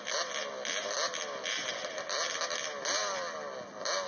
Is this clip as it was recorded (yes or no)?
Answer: yes